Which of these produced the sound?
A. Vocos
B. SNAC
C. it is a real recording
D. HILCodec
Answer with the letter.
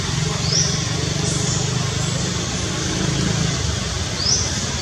C